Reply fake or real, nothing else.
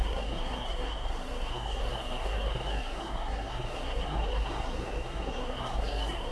fake